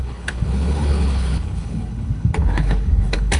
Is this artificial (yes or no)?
yes